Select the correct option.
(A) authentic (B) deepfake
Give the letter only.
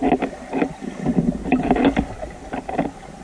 A